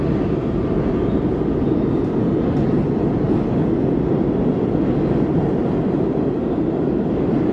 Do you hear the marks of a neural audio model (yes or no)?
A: no